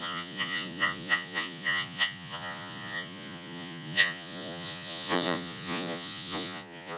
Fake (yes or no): yes